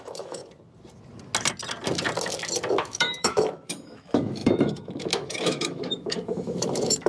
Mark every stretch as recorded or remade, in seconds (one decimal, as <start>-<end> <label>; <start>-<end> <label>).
0.0-0.4 remade; 0.4-2.7 recorded; 2.7-7.1 remade